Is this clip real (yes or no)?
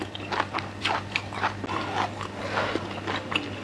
yes